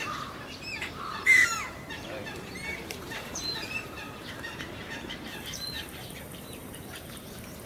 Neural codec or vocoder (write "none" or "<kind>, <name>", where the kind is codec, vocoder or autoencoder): vocoder, BigVGAN v2